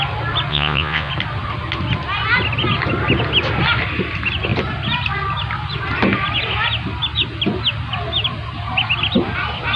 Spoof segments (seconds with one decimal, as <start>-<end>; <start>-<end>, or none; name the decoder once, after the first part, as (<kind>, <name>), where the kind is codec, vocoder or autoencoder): 0.5-1.1 (vocoder, Vocos)